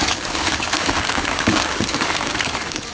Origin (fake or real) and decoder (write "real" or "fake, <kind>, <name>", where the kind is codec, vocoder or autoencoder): fake, codec, DAC